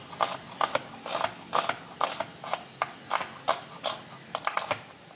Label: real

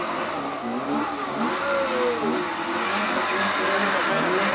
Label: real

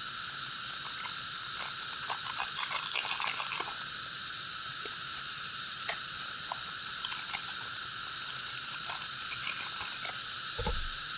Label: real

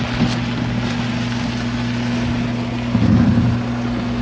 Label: real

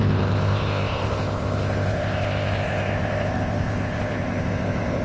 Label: fake